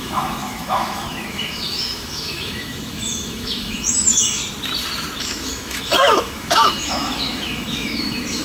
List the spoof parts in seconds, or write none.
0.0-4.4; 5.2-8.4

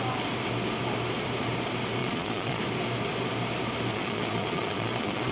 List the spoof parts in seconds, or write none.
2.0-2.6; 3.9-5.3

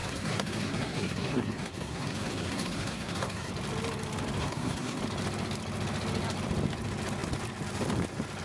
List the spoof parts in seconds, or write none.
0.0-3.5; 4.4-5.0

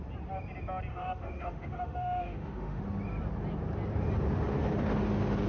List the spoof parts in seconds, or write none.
0.9-2.8

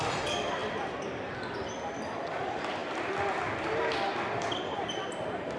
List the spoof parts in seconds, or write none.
0.6-1.3